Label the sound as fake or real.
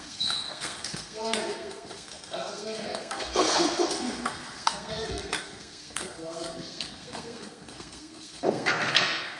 fake